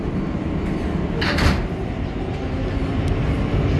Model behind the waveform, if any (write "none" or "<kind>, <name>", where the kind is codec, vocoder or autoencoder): none